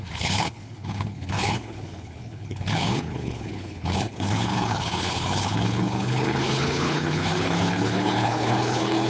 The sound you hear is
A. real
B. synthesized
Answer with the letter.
B